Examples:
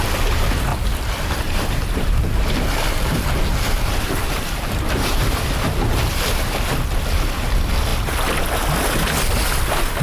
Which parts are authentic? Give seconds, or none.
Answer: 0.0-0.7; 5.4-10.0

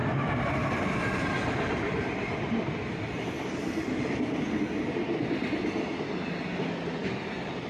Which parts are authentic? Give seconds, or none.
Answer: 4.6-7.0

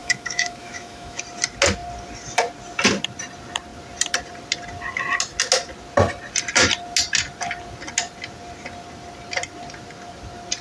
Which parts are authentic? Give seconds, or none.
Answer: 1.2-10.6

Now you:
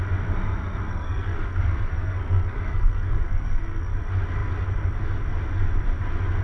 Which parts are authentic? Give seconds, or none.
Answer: 0.0-0.9; 3.9-6.4

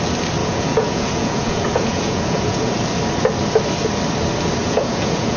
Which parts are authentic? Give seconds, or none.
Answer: 0.0-0.4; 2.7-4.6

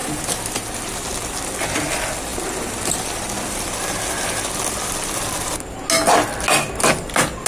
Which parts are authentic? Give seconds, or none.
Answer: 0.0-7.5